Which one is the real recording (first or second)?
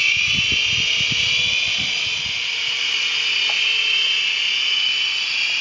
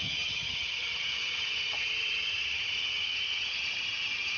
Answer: first